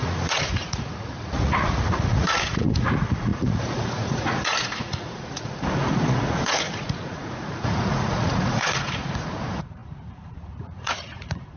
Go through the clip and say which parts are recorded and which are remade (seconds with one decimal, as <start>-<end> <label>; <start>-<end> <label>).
0.0-11.6 remade